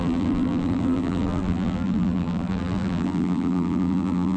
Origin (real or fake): fake